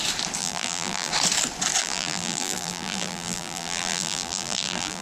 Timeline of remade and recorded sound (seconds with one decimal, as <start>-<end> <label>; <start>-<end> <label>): 0.0-0.4 recorded; 0.4-1.1 remade; 1.1-1.8 recorded; 1.8-5.0 remade